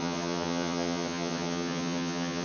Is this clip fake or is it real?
fake